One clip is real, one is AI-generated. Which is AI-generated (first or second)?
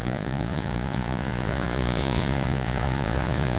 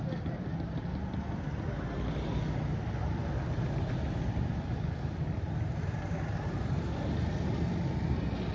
first